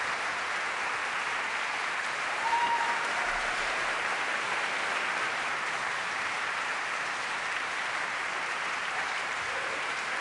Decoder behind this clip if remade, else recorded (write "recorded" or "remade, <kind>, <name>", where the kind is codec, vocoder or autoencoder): remade, vocoder, BigVGAN v2